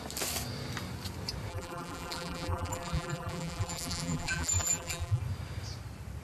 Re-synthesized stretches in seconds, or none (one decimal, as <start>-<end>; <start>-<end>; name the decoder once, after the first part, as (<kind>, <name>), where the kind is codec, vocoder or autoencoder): 1.5-5.2 (vocoder, BigVGAN v2)

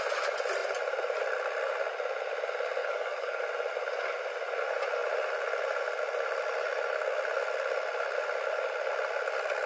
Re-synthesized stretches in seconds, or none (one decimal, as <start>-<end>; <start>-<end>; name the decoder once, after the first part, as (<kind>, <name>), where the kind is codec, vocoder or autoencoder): 2.8-3.4 (codec, DAC)

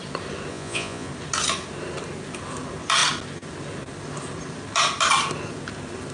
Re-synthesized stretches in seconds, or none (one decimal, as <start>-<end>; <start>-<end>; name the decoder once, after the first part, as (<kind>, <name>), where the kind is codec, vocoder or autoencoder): 0.5-1.1 (vocoder, Vocos)

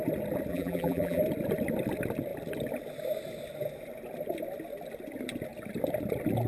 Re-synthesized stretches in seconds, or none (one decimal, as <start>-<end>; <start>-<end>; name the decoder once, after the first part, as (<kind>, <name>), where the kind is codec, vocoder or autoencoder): 0.5-1.2 (vocoder, BigVGAN v2)

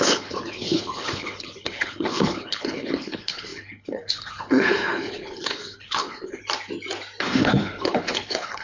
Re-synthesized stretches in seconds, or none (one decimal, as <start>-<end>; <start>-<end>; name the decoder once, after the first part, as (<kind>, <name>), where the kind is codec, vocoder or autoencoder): 0.0-6.4 (codec, HILCodec); 7.2-8.6

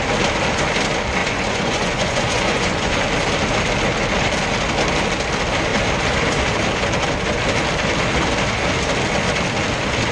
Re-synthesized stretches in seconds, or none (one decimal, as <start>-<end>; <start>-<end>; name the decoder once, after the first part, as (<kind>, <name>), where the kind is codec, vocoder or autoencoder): 1.2-3.0 (vocoder, Vocos)

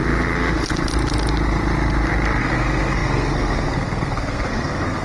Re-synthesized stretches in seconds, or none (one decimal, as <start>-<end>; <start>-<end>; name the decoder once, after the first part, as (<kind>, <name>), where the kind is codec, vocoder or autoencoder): 2.4-5.0 (codec, SNAC)